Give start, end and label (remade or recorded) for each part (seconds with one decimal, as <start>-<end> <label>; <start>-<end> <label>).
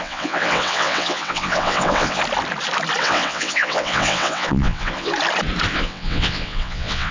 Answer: 0.0-2.2 remade; 2.2-3.0 recorded; 3.0-5.1 remade; 5.1-5.7 recorded; 5.7-7.1 remade